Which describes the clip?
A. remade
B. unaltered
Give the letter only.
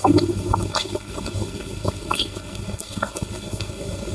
A